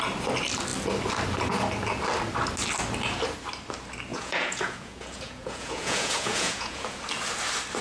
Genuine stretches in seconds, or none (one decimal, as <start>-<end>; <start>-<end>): 0.0-4.1; 7.0-7.8